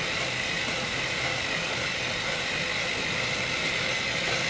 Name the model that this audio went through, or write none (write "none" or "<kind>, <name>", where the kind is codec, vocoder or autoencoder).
none